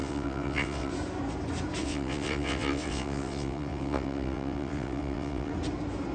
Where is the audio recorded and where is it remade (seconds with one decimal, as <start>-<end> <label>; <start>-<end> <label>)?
0.0-0.9 remade; 0.9-1.8 recorded; 1.8-5.5 remade; 5.5-6.1 recorded